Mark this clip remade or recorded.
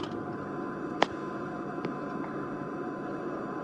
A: recorded